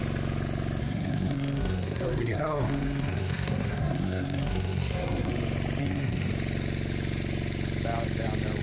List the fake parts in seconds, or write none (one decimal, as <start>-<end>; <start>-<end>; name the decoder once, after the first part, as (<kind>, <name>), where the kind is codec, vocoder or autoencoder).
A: 0.8-5.3 (codec, SNAC); 5.8-6.3

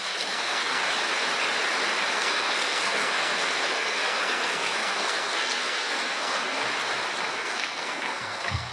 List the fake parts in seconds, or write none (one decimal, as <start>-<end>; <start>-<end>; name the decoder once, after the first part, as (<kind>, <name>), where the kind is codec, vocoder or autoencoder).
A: 0.0-0.8 (codec, SNAC); 2.1-6.6; 7.3-8.7

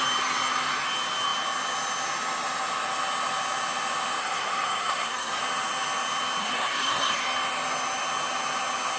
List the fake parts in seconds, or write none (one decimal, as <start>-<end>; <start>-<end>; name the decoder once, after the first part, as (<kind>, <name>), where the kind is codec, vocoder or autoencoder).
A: 4.2-5.4 (codec, SNAC); 6.4-7.2

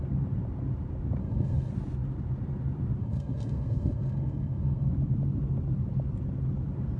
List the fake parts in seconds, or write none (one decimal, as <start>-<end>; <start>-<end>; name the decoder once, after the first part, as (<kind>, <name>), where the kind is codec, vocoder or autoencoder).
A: 1.2-1.7 (codec, SNAC); 3.0-4.9

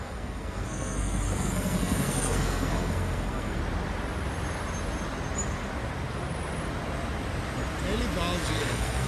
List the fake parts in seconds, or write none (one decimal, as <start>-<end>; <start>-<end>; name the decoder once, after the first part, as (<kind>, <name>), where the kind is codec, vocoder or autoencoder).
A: 0.0-3.6 (codec, SNAC); 8.4-9.1